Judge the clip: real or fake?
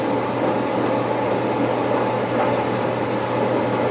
real